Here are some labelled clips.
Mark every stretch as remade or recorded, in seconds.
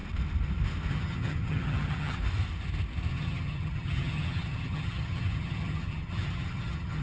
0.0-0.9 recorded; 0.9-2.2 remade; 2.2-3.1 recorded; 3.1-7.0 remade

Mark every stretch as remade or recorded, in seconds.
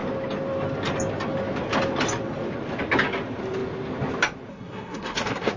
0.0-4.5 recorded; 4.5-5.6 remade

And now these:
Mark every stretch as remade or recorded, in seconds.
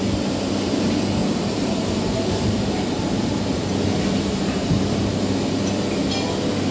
0.0-1.2 recorded; 1.2-5.2 remade; 5.2-6.7 recorded